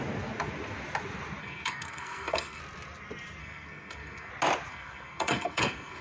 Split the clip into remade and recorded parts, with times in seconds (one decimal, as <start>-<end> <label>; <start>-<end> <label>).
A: 0.0-1.4 recorded; 1.4-2.6 remade; 2.6-3.4 recorded; 3.4-4.3 remade; 4.3-4.7 recorded; 4.7-6.0 remade

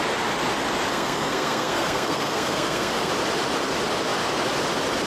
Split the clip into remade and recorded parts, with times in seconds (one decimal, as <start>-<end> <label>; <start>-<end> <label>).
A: 0.0-0.9 recorded; 0.9-3.1 remade; 3.1-5.1 recorded

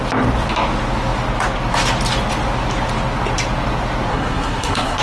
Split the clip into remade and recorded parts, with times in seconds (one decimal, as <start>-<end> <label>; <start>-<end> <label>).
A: 0.0-4.1 recorded; 4.1-5.0 remade

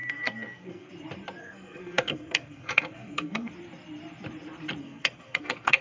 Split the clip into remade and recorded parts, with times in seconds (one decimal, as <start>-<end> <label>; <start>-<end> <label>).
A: 0.0-0.9 remade; 0.9-1.4 recorded; 1.4-3.5 remade; 3.5-4.8 recorded; 4.8-5.8 remade